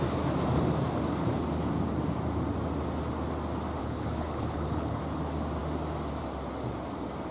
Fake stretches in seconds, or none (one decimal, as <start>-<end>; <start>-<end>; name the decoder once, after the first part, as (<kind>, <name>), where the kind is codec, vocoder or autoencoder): 3.8-5.0 (codec, HILCodec)